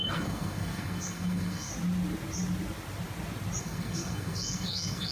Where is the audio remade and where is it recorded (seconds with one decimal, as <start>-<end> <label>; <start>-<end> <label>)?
0.0-1.7 remade; 1.7-3.6 recorded; 3.6-5.1 remade